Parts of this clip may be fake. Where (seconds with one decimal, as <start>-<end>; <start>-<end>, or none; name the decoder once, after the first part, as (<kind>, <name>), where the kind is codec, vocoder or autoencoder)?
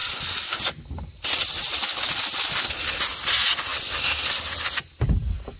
none